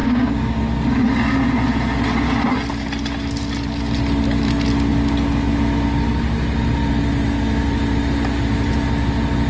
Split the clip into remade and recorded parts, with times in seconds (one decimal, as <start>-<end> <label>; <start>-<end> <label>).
0.0-0.6 remade; 0.6-9.5 recorded